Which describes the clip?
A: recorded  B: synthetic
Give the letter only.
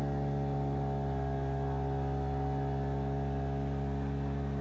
A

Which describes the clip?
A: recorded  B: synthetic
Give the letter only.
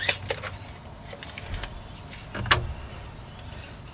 A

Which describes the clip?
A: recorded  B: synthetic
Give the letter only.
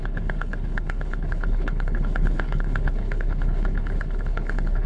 B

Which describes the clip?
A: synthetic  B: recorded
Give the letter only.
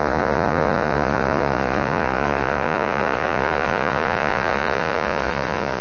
A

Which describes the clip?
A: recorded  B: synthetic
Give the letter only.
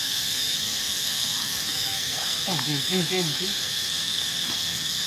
B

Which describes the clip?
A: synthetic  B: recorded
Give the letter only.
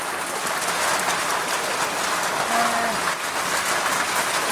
B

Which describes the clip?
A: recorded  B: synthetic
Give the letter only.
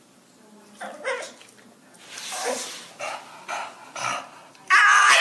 A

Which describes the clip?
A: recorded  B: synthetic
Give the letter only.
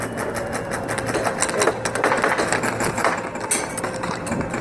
A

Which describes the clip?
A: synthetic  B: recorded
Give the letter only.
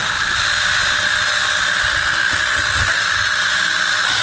B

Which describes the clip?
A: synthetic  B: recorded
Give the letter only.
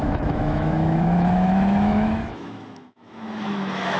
A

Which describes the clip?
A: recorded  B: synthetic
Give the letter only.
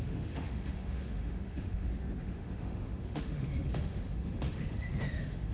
B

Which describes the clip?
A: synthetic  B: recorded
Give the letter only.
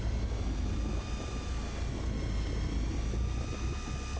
B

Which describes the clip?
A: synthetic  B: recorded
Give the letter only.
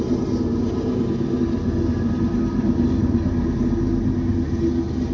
B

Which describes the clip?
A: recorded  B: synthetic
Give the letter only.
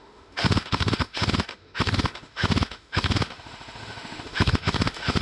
B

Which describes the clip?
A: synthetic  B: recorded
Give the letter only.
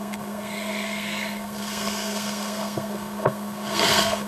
A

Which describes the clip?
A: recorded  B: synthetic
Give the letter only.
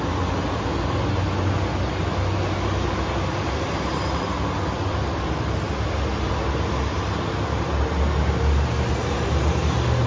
A